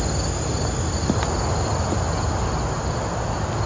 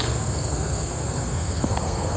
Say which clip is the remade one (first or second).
second